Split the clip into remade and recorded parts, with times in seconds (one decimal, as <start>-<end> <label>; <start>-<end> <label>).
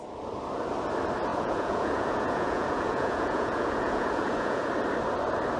0.0-1.3 recorded; 1.3-4.7 remade; 4.7-5.6 recorded